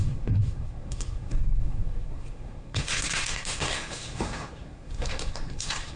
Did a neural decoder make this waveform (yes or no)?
yes